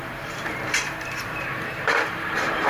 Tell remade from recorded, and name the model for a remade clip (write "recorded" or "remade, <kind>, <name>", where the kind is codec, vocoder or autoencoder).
remade, vocoder, BigVGAN v2